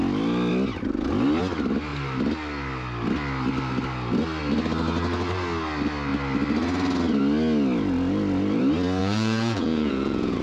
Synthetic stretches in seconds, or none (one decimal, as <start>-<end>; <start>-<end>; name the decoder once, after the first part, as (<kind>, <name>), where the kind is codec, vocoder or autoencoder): 9.0-10.4 (vocoder, Vocos)